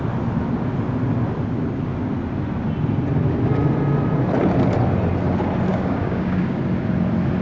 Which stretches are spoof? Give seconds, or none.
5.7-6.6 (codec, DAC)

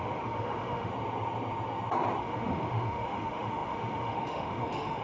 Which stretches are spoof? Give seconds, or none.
0.0-0.9 (autoencoder, DAC-VAE); 2.2-5.0

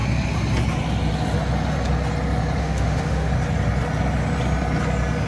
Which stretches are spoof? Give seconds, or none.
2.6-3.3 (autoencoder, DAC-VAE)